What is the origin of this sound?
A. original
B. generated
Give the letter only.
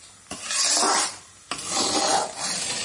A